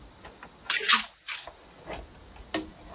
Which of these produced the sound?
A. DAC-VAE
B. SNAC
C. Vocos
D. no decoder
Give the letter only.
D